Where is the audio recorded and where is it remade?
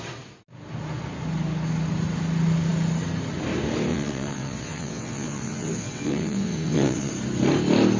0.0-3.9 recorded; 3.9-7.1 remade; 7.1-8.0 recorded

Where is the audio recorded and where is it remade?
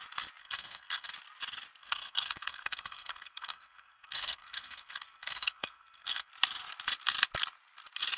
0.0-0.4 recorded; 0.4-1.1 remade; 1.1-1.8 recorded; 1.8-6.3 remade; 6.3-8.2 recorded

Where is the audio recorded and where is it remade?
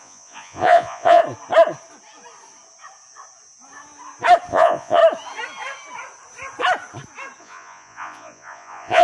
0.0-1.2 remade; 1.2-4.5 recorded; 4.5-5.0 remade; 5.0-7.4 recorded; 7.4-9.0 remade